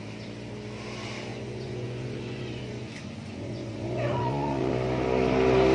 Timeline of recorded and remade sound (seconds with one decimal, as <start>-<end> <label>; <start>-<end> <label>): 0.0-1.3 recorded; 1.3-4.7 remade; 4.7-5.7 recorded